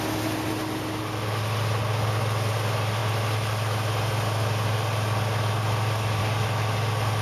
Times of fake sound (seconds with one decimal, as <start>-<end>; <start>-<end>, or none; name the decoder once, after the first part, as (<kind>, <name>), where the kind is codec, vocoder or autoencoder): none